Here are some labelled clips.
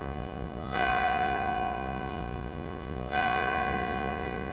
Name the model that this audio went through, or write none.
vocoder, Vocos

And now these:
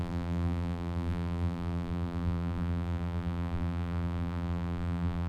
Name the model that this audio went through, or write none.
vocoder, BigVGAN v2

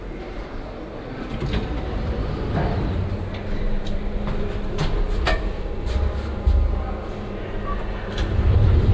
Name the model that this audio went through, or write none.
none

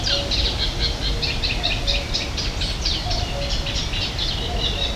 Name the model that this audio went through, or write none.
none